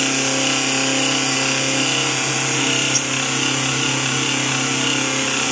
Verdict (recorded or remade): recorded